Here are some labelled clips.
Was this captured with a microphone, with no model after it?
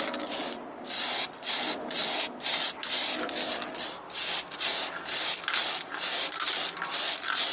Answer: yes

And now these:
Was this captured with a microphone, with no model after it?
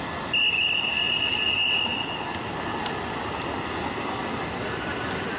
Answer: yes